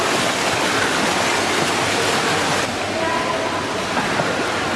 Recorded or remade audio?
recorded